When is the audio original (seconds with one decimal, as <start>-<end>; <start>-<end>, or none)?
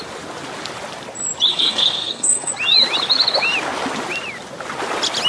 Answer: 0.0-1.5; 2.5-5.3